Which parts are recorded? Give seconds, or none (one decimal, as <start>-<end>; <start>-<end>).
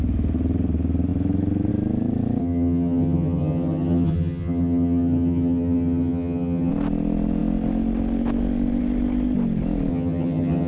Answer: 0.0-2.4; 6.7-9.9